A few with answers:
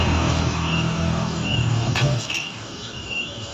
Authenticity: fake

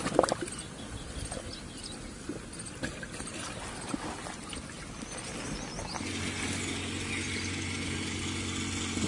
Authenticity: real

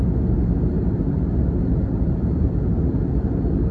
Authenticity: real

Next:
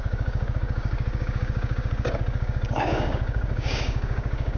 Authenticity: fake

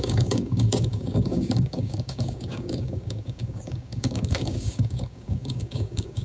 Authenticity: fake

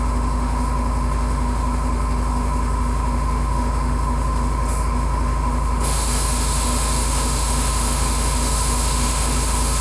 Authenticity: fake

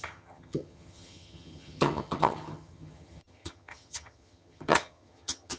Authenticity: fake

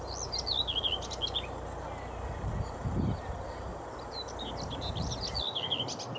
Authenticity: real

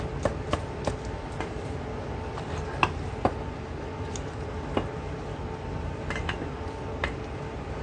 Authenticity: real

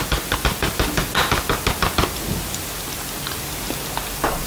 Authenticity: real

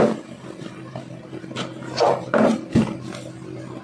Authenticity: fake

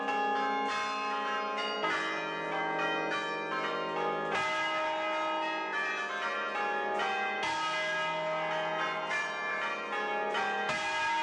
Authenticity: real